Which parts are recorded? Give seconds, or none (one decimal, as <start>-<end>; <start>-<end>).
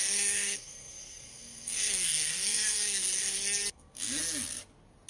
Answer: 3.2-3.7; 4.2-5.1